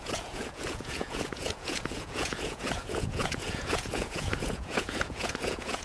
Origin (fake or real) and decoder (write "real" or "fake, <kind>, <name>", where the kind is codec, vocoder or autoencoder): fake, vocoder, Vocos